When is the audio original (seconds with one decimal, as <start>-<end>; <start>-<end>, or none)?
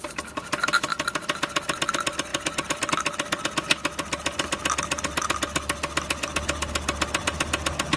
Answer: 0.0-8.0